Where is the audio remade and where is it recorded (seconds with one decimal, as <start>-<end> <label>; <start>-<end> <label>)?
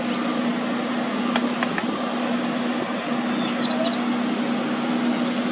0.0-5.5 recorded